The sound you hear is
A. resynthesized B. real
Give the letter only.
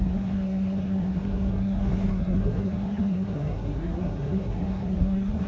A